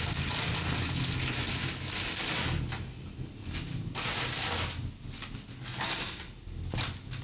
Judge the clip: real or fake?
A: real